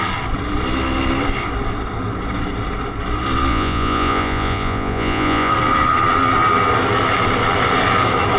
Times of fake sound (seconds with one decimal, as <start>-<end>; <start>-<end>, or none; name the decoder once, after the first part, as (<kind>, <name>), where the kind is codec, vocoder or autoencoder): 3.5-5.5 (vocoder, Vocos)